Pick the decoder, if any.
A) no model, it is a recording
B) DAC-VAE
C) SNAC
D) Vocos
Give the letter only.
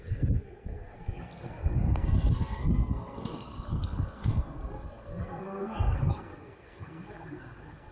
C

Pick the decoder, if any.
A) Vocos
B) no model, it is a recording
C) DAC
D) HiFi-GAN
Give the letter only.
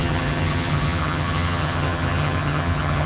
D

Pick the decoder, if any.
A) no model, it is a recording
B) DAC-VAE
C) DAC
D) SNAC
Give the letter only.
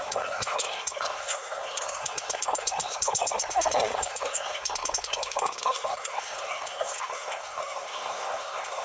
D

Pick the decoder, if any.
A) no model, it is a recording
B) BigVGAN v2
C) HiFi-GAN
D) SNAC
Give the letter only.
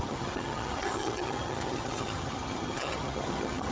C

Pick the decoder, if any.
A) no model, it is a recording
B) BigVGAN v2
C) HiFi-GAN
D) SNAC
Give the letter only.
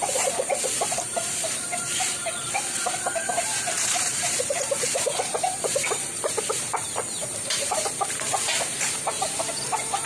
B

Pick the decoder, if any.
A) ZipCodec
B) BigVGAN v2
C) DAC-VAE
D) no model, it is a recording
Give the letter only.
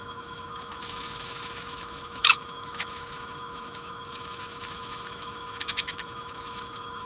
C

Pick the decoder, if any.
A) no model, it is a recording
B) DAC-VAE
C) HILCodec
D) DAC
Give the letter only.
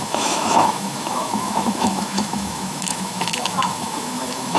B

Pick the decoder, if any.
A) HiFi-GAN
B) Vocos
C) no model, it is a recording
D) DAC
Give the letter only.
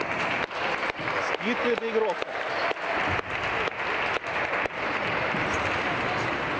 C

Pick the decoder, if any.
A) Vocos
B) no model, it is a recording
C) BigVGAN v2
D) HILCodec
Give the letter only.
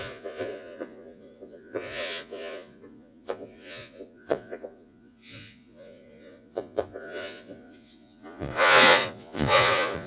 A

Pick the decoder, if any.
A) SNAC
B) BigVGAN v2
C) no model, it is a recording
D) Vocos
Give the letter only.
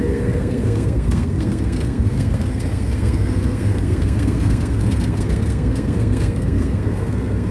A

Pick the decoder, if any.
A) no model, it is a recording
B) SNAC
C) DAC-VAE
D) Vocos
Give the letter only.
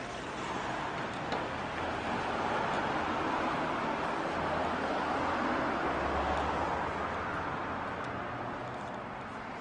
A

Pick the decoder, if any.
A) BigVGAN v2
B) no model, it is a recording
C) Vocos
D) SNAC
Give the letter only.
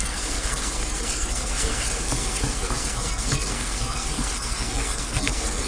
D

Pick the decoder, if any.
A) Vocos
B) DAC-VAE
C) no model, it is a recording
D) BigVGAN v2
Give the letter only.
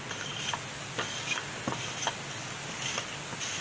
C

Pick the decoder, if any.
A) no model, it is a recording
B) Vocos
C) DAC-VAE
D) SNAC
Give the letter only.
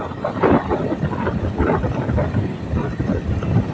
A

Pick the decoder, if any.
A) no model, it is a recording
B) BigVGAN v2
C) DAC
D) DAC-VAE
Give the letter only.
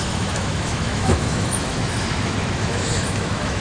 D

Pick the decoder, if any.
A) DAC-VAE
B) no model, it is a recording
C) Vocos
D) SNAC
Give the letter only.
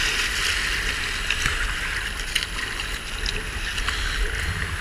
B